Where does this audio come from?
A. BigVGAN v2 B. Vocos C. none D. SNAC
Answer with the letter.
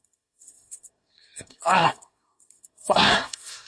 D